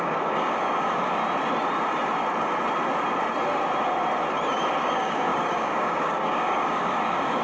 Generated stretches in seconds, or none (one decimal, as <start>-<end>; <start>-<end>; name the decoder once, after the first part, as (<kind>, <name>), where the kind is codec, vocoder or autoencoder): 0.0-1.2 (codec, DAC); 4.8-7.4